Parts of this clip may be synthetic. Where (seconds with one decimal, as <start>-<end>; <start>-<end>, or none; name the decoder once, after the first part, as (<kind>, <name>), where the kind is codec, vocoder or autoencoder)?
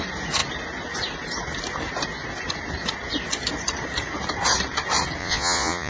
5.2-5.9 (vocoder, Vocos)